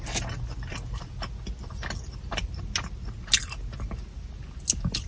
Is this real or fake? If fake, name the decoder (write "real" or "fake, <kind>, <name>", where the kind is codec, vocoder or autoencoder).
real